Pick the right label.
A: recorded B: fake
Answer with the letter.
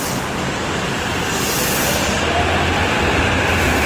A